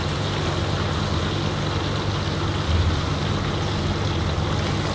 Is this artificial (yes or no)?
no